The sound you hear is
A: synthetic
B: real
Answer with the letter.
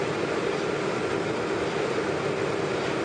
B